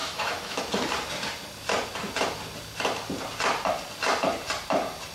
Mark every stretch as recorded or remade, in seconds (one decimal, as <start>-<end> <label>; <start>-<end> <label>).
0.0-0.6 remade; 0.6-5.1 recorded